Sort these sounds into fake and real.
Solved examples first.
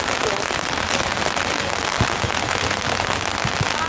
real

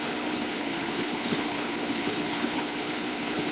fake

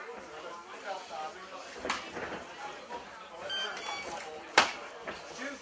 real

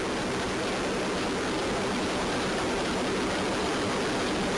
real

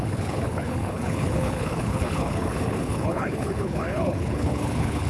fake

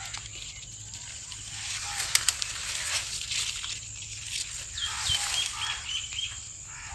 real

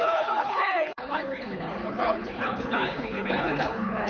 fake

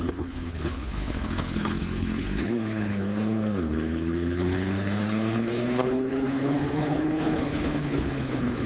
fake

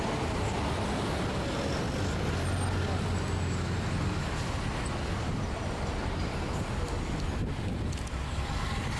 real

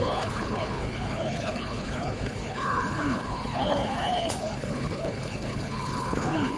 fake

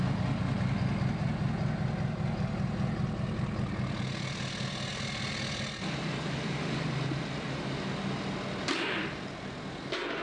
real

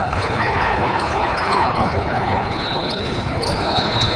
fake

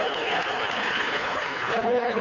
fake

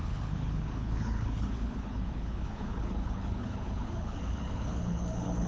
fake